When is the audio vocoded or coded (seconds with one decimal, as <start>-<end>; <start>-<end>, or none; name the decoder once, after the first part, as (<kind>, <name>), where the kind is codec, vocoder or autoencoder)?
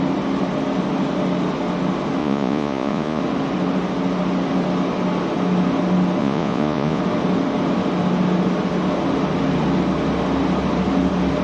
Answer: 2.2-3.2 (vocoder, Vocos); 6.2-7.0